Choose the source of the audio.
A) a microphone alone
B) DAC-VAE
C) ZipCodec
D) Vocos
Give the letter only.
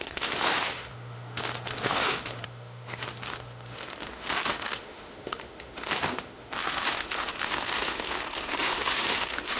B